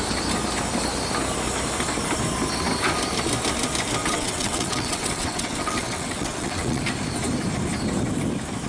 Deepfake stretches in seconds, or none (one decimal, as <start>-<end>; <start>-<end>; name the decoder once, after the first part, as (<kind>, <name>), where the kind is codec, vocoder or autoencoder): 4.0-6.8 (vocoder, WaveNeXt)